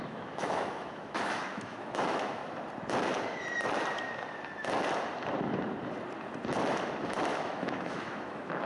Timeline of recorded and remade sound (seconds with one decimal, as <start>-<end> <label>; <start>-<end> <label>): 0.0-2.4 remade; 2.4-7.2 recorded; 7.2-8.7 remade